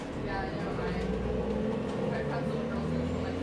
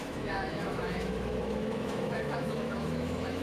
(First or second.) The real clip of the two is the first